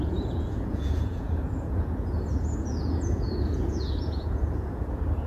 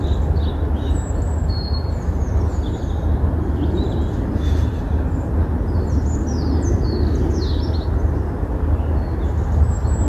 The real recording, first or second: second